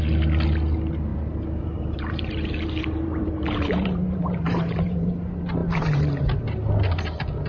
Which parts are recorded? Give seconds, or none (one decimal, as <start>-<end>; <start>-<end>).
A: 0.0-1.1; 5.1-5.6; 6.4-7.5